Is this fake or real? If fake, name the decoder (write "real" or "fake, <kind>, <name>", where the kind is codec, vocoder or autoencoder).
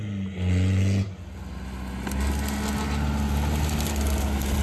real